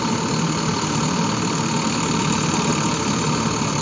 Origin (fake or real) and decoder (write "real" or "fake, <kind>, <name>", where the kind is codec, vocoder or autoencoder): fake, vocoder, BigVGAN v2